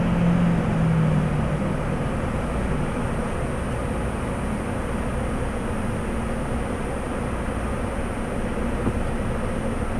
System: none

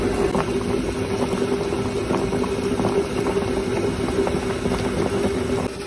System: none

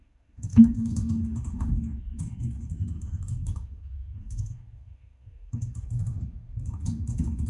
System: autoencoder, DAC-VAE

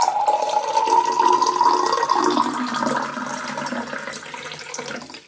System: none